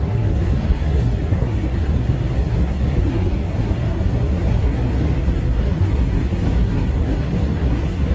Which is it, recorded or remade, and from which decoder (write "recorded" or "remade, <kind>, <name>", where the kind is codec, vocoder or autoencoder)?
remade, codec, SNAC